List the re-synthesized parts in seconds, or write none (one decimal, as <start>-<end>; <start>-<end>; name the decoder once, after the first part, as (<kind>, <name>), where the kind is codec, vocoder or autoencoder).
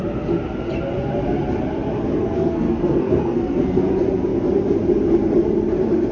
2.2-3.8 (codec, SNAC)